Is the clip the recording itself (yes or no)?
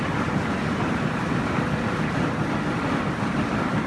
yes